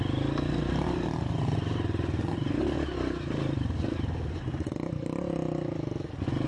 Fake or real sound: real